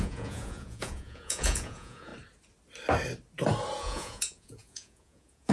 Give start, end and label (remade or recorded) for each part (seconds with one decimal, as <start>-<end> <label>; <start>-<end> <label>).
0.0-2.1 remade; 2.1-3.8 recorded; 3.8-5.5 remade